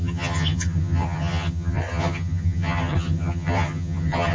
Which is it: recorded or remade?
remade